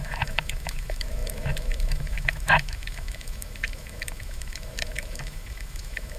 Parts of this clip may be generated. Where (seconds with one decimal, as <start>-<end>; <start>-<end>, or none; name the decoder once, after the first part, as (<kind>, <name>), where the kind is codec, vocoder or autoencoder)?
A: 0.0-6.2 (autoencoder, DAC-VAE)